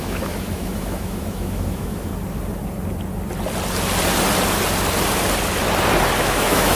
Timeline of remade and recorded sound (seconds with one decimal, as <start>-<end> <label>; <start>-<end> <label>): 0.0-2.1 remade; 2.1-6.2 recorded; 6.2-6.8 remade

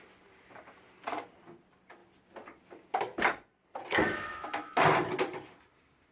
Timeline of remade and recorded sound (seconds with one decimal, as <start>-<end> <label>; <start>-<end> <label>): 0.0-4.0 recorded; 4.0-4.8 remade; 4.8-6.1 recorded

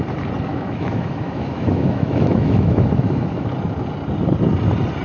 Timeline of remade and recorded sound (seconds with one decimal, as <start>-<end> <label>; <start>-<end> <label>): 0.0-0.5 recorded; 0.5-3.5 remade; 3.5-5.0 recorded

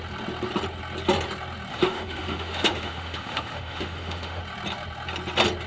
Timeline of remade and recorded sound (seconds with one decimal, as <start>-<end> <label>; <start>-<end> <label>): 0.0-1.7 recorded; 1.7-4.4 remade; 4.4-5.7 recorded

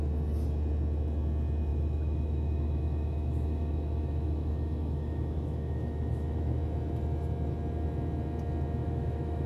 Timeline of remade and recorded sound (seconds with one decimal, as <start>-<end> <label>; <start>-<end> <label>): 0.0-1.7 recorded; 1.7-6.6 remade; 6.6-8.8 recorded; 8.8-9.5 remade

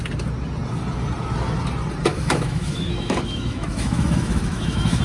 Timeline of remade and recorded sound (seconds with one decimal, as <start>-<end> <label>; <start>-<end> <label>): 0.0-2.1 recorded; 2.1-5.0 remade